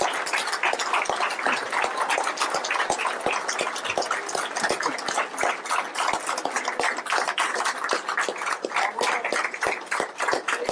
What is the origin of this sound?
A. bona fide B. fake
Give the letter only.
A